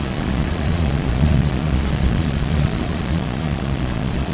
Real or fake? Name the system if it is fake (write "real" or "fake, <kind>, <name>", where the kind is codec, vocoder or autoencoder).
fake, vocoder, Vocos